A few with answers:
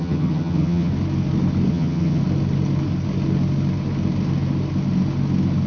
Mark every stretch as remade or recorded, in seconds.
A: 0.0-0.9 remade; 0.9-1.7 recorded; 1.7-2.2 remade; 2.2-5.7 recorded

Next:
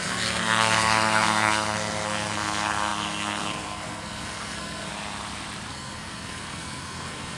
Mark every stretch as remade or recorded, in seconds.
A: 0.0-4.9 remade; 4.9-5.7 recorded; 5.7-7.4 remade

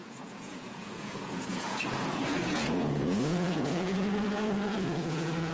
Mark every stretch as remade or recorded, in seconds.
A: 0.0-5.5 remade

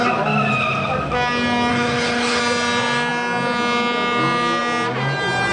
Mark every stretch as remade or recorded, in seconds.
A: 0.0-1.7 recorded; 1.7-2.4 remade; 2.4-5.5 recorded

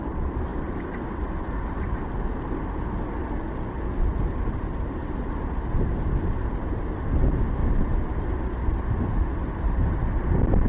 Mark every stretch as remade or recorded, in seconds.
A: 0.0-7.6 recorded; 7.6-10.7 remade